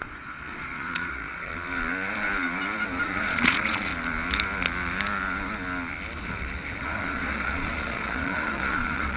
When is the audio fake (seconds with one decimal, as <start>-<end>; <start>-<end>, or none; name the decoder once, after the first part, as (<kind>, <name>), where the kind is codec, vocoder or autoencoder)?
0.0-1.5 (vocoder, Vocos); 3.0-3.9; 6.8-9.2